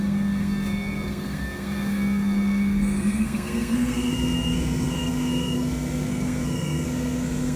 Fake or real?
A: fake